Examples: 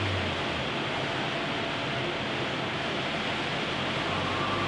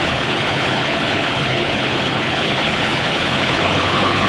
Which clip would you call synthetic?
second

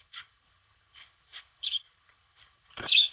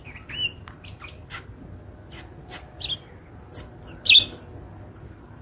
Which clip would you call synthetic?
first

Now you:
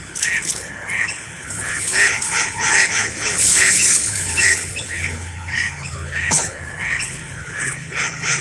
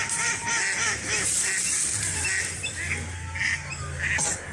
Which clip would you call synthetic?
first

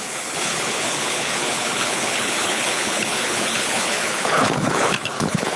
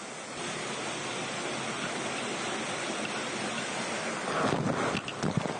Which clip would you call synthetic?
first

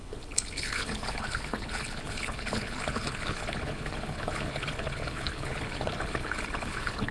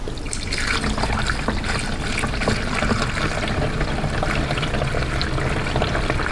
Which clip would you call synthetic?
first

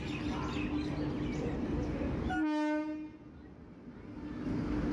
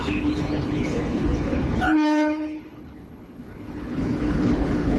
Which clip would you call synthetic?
second